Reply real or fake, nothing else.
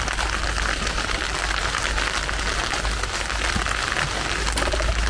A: real